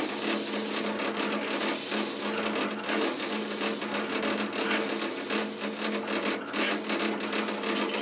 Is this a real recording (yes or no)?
yes